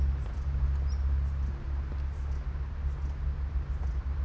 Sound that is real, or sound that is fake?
real